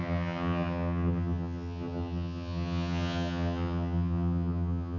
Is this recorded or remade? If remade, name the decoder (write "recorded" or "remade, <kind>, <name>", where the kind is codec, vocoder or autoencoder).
remade, vocoder, HiFi-GAN